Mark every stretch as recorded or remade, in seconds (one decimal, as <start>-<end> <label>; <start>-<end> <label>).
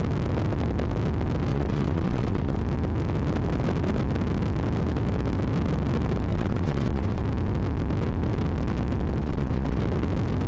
0.0-1.5 recorded; 1.5-2.6 remade; 2.6-6.3 recorded; 6.3-7.2 remade; 7.2-9.2 recorded; 9.2-9.8 remade; 9.8-10.5 recorded